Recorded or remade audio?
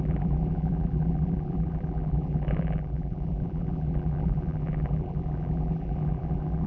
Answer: remade